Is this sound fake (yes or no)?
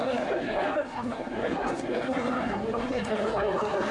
yes